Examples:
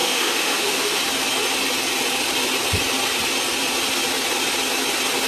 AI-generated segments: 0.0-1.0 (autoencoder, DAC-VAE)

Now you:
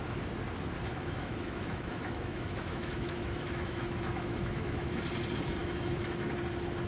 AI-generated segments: 0.9-5.0 (autoencoder, DAC-VAE); 5.6-6.3

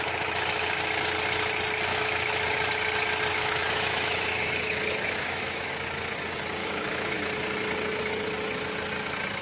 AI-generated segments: 1.9-2.7 (autoencoder, DAC-VAE); 3.3-5.7; 6.6-7.2

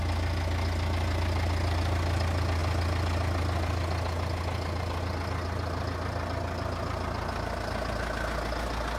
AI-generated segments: none

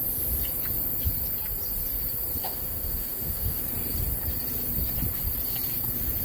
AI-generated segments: 2.4-3.6 (autoencoder, DAC-VAE)

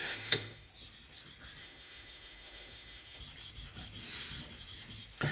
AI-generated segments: 0.0-0.7 (autoencoder, DAC-VAE); 1.6-3.2